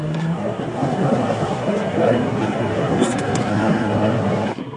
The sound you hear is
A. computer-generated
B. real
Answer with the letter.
A